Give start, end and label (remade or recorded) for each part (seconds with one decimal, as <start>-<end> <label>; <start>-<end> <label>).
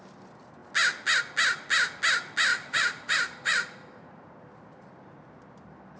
0.0-2.5 recorded; 2.5-4.3 remade; 4.3-6.0 recorded